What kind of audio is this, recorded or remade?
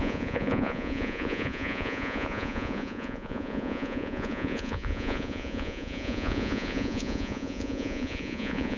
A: remade